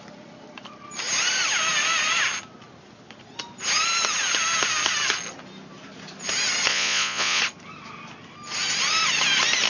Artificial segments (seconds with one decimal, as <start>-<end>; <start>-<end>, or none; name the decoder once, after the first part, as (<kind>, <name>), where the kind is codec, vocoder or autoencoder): 6.7-7.4 (vocoder, Vocos)